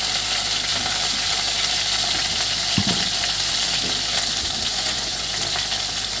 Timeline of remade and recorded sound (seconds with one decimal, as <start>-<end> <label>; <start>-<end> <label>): 0.0-4.7 recorded; 4.7-5.3 remade; 5.3-6.2 recorded